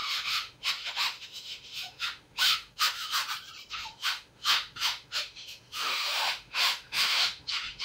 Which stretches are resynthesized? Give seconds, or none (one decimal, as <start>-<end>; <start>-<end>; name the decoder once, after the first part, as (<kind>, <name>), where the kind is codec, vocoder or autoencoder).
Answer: 0.0-3.2 (autoencoder, DAC-VAE); 3.7-7.8